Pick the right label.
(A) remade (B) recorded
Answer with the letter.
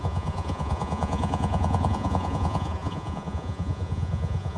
A